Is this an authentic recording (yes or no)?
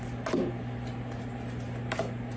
yes